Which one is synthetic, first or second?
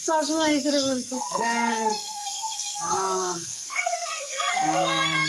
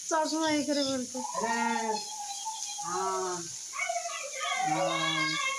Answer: first